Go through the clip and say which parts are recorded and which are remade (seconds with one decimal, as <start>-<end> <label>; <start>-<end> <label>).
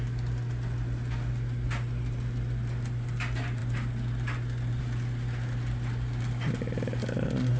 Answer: 0.0-7.6 recorded